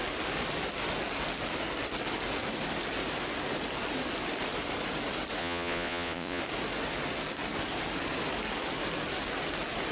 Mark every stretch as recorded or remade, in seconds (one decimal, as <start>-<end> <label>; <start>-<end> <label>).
0.0-5.4 recorded; 5.4-6.4 remade; 6.4-9.9 recorded